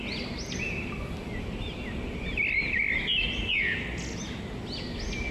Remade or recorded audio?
recorded